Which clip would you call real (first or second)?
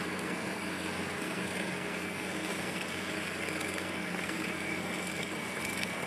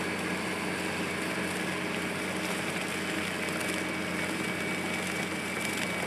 second